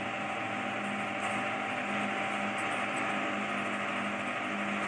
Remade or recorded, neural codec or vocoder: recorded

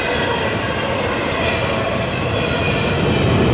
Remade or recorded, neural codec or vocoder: recorded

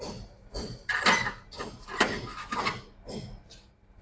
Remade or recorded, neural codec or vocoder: recorded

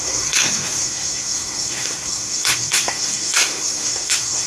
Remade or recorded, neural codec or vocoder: remade, codec, SNAC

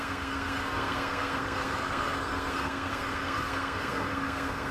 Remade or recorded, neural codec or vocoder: remade, codec, SNAC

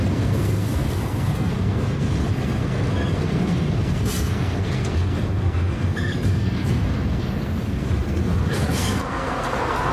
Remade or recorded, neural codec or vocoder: remade, codec, SNAC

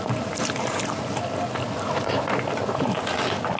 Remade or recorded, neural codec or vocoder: recorded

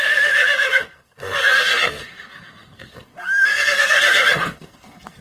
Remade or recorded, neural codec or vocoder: remade, codec, SNAC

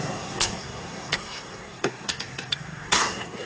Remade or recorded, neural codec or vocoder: remade, codec, SNAC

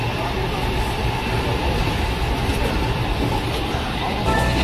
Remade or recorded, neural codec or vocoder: recorded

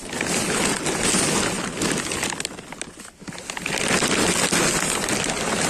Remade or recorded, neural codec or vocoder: recorded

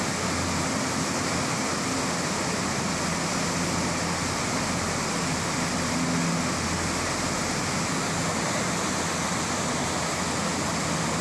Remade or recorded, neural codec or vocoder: recorded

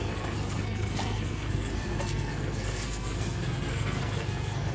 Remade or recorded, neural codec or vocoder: remade, codec, SNAC